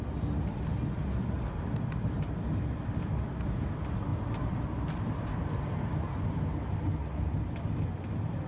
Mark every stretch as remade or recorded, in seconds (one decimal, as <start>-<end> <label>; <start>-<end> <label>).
0.0-8.5 recorded